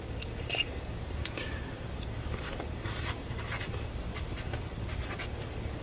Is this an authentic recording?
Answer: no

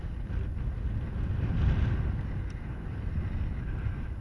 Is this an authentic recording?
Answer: yes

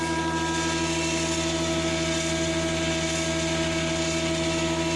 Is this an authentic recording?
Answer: yes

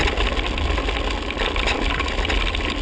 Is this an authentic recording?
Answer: yes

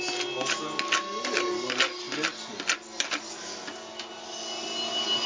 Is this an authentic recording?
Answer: yes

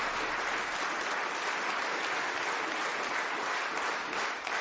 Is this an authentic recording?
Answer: yes